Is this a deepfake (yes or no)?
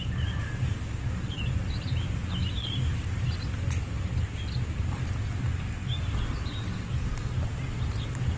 no